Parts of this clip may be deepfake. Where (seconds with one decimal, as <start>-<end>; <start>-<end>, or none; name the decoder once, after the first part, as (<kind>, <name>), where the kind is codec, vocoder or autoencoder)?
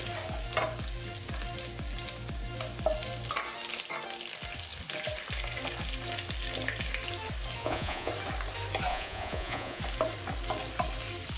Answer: 7.6-8.1 (vocoder, Vocos); 8.9-9.8